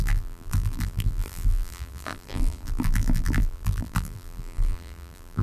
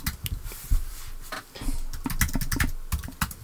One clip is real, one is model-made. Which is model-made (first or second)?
first